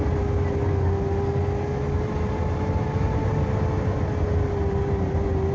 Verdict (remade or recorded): recorded